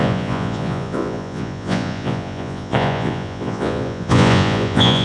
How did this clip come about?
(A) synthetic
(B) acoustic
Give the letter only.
A